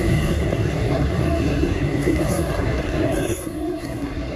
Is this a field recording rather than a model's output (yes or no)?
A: no